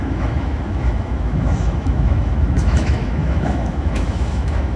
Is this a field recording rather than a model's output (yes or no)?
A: no